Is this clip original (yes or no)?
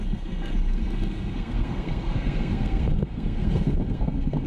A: no